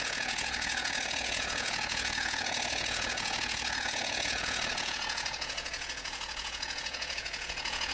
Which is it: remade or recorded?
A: remade